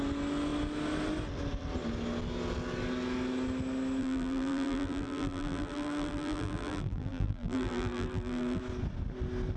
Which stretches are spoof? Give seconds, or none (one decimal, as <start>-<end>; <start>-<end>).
4.0-8.6